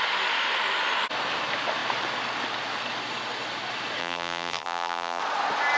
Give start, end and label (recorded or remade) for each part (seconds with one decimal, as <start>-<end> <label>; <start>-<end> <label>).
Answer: 0.0-4.0 recorded; 4.0-5.2 remade; 5.2-5.8 recorded